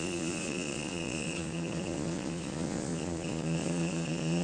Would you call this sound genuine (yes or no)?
no